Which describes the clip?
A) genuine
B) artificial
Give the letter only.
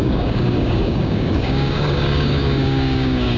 B